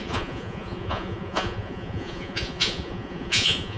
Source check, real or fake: fake